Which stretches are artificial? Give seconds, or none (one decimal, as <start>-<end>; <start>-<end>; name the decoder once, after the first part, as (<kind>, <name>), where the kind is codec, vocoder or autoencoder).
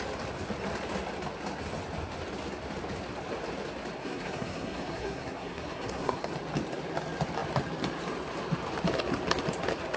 4.0-6.3 (codec, SNAC)